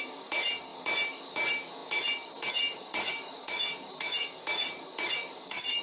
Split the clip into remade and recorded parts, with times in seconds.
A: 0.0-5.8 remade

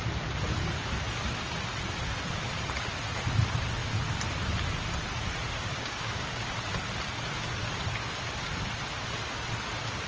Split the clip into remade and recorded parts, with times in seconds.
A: 0.0-5.7 recorded; 5.7-6.5 remade; 6.5-10.1 recorded

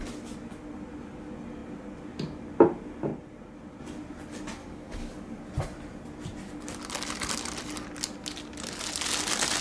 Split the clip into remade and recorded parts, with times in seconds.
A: 0.0-4.6 recorded; 4.6-5.4 remade; 5.4-9.6 recorded

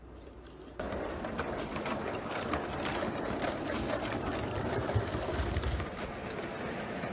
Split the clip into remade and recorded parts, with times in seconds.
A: 0.0-1.7 recorded; 1.7-2.6 remade; 2.6-7.1 recorded

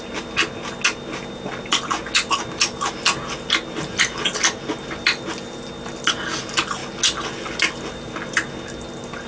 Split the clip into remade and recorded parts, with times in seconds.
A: 0.0-9.3 recorded

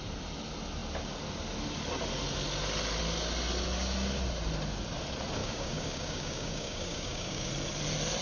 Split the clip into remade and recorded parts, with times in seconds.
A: 0.0-5.4 recorded; 5.4-7.5 remade; 7.5-8.2 recorded

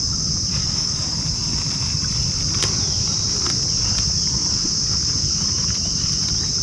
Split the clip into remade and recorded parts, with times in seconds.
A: 0.0-0.6 recorded; 0.6-1.2 remade; 1.2-6.6 recorded